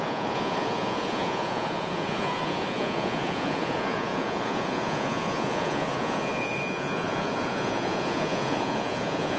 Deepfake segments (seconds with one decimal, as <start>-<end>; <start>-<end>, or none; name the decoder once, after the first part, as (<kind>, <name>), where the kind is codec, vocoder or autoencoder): 0.0-9.4 (vocoder, Vocos)